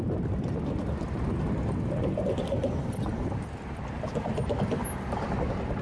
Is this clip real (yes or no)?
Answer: yes